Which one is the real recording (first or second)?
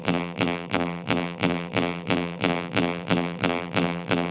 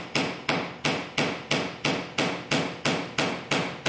second